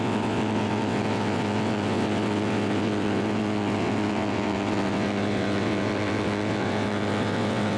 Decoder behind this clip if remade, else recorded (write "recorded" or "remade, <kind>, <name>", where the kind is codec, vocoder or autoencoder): remade, vocoder, WaveNeXt